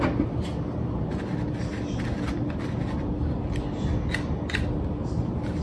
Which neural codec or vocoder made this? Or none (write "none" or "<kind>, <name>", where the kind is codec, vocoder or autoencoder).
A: none